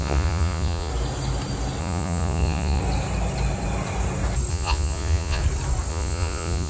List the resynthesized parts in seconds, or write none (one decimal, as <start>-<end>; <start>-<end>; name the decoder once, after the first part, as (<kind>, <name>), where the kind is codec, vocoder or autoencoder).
0.0-0.9 (vocoder, Vocos); 1.8-2.8; 4.5-5.4; 5.9-6.7